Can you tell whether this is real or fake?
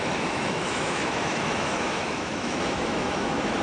fake